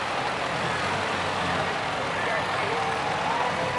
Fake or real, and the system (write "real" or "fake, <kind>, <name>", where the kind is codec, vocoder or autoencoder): real